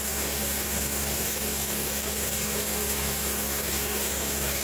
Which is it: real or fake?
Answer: fake